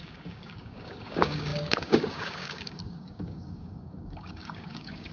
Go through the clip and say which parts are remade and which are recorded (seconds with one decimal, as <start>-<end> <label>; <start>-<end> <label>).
0.0-5.1 remade